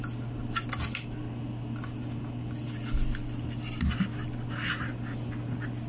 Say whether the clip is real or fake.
real